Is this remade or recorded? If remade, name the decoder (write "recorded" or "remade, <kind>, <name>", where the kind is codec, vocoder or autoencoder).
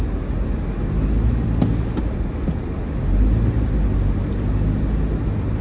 recorded